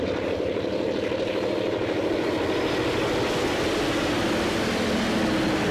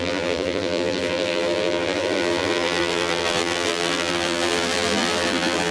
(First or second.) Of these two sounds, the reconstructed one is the second